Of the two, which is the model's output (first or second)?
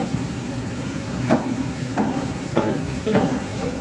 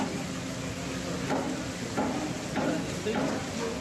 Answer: first